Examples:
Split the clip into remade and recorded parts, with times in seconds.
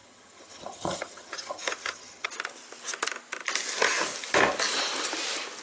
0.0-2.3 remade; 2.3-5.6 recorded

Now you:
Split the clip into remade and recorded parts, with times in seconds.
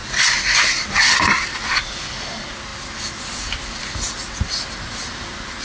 0.0-5.6 recorded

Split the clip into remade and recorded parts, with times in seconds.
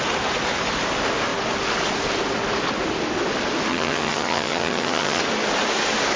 0.0-3.7 recorded; 3.7-5.2 remade; 5.2-6.2 recorded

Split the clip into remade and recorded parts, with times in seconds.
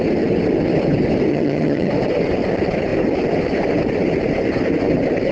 0.0-1.3 recorded; 1.3-1.9 remade; 1.9-5.3 recorded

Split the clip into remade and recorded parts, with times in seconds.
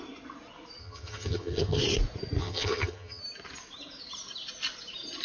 0.0-0.8 recorded; 0.8-1.8 remade; 1.8-2.4 recorded; 2.4-3.2 remade; 3.2-5.2 recorded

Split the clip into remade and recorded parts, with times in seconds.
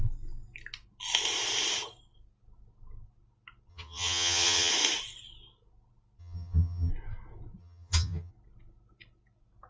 0.0-3.7 recorded; 3.7-4.7 remade; 4.7-6.2 recorded; 6.2-6.9 remade; 6.9-7.6 recorded; 7.6-8.3 remade; 8.3-9.7 recorded